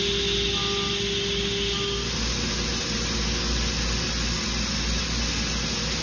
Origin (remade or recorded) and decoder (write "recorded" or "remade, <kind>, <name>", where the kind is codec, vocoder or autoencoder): recorded